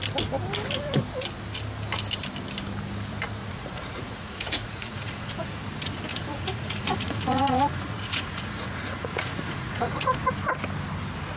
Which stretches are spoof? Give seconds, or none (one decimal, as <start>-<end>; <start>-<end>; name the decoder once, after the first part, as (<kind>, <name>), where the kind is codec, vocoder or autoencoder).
3.4-5.6 (vocoder, Vocos); 6.1-10.3

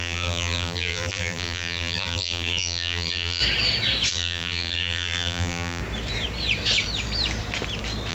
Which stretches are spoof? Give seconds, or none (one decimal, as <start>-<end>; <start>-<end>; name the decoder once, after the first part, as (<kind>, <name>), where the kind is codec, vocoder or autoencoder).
0.0-3.4 (vocoder, BigVGAN v2); 4.1-5.8

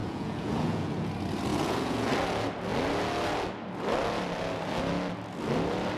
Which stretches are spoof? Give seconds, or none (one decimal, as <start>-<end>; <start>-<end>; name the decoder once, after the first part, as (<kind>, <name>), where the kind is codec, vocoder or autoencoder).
0.0-1.1 (vocoder, Vocos); 1.5-2.1

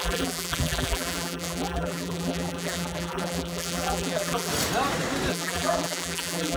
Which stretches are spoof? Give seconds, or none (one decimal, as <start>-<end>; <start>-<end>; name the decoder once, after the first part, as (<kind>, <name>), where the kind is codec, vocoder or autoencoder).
0.0-4.5 (vocoder, BigVGAN v2); 5.3-6.6

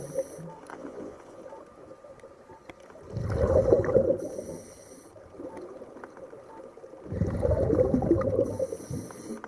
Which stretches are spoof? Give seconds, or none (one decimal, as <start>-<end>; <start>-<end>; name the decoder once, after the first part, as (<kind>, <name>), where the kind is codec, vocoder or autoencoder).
0.7-1.4 (vocoder, Vocos)

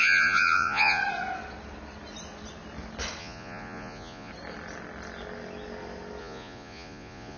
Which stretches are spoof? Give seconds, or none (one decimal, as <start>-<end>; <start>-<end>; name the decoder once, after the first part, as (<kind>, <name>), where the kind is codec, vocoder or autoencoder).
0.0-1.0 (vocoder, Vocos); 3.2-4.3; 6.2-7.4